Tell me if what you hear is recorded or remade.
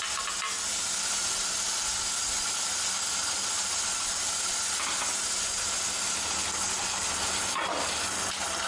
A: recorded